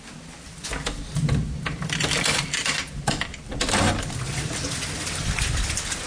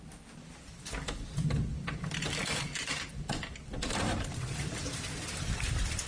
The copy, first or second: second